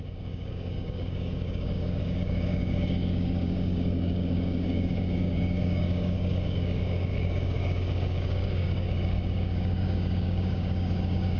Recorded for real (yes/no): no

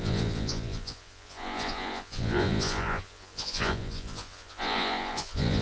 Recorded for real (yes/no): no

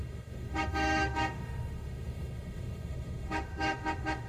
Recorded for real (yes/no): no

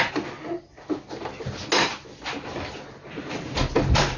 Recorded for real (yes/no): yes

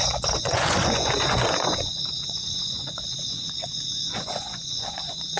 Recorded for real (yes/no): no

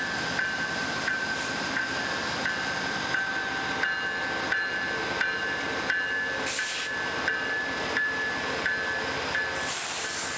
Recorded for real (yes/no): yes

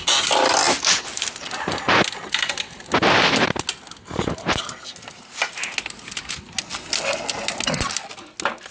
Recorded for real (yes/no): yes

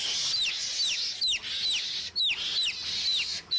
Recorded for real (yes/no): yes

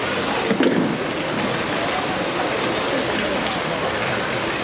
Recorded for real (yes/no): yes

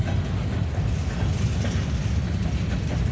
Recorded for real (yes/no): yes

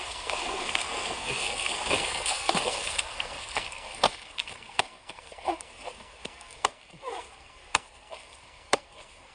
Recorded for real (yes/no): no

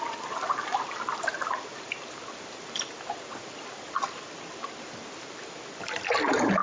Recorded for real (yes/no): yes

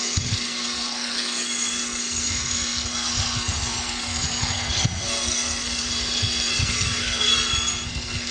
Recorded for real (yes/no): no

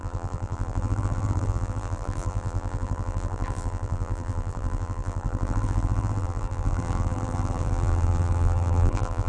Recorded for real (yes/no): no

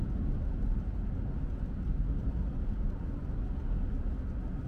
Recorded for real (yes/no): yes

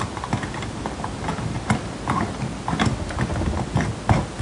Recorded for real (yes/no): yes